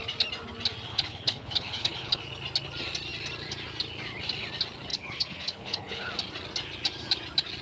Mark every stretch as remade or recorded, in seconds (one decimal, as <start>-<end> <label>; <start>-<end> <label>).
0.0-0.9 recorded; 0.9-2.2 remade; 2.2-4.9 recorded; 4.9-6.1 remade; 6.1-7.6 recorded